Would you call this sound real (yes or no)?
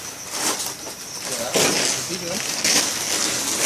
yes